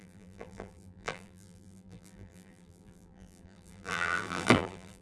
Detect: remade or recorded remade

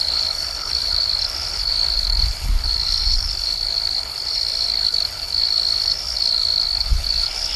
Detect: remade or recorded remade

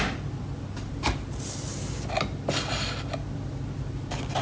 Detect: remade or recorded recorded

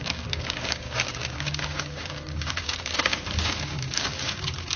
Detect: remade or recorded remade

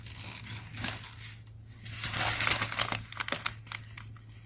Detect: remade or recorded recorded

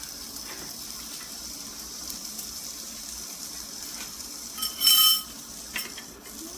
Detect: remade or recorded remade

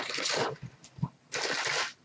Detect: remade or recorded remade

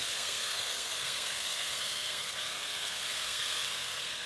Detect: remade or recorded remade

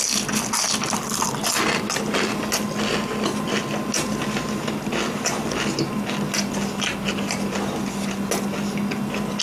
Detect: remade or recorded recorded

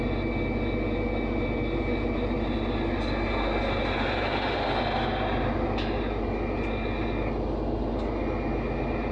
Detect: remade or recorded recorded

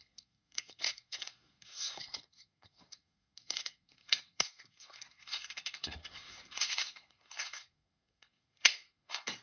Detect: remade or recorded remade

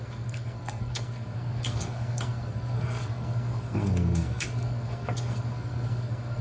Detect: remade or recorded remade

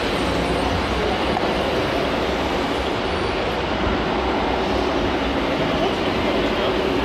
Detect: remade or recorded recorded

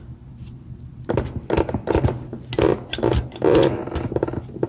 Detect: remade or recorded recorded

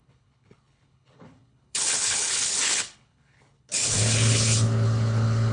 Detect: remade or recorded remade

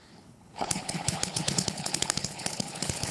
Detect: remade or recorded remade